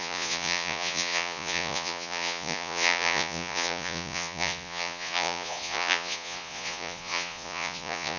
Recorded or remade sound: remade